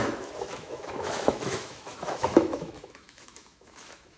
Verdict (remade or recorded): remade